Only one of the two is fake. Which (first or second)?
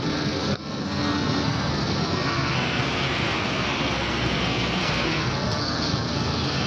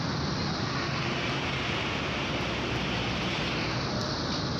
first